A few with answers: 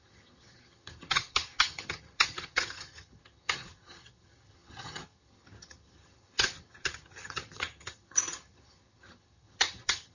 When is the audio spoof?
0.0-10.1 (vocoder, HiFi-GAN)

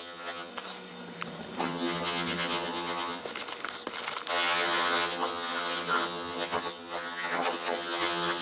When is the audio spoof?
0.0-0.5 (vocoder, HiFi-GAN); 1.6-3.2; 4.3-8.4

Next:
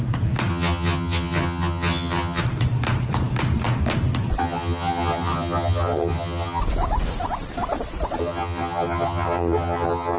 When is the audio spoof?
0.5-2.4 (vocoder, HiFi-GAN); 4.4-6.6; 8.2-10.2

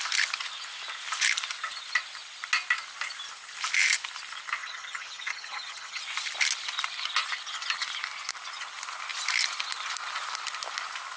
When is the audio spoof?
4.6-6.0 (vocoder, HiFi-GAN)